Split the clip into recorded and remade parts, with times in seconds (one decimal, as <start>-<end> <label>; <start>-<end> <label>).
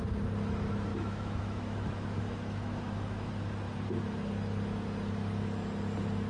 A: 0.0-0.9 recorded; 0.9-3.3 remade; 3.3-6.3 recorded